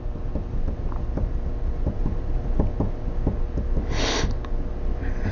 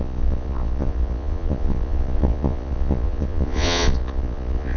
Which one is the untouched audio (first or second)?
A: first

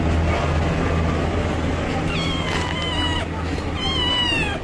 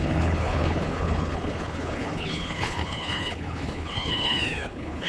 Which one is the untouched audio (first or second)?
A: first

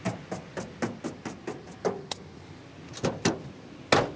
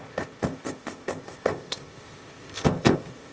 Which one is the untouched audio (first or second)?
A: first